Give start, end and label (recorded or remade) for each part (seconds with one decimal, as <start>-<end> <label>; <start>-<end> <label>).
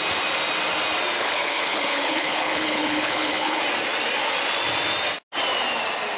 0.0-1.2 recorded; 1.2-3.6 remade; 3.6-6.2 recorded